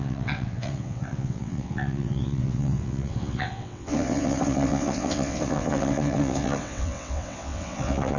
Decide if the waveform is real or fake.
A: fake